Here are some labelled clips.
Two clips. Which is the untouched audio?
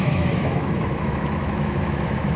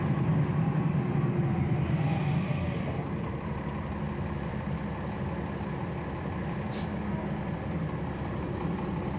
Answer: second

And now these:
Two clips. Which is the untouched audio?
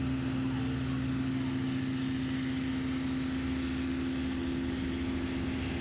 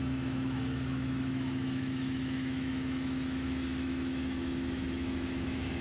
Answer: first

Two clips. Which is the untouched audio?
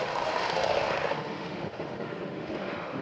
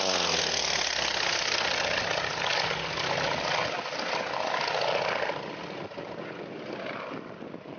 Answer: second